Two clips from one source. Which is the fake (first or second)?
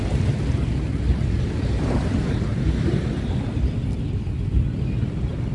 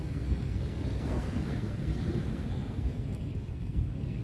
second